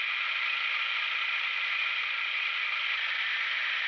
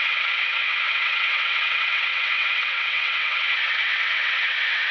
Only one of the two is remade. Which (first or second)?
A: second